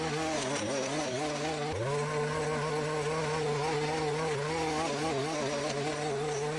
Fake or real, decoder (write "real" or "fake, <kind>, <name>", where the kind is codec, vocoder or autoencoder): real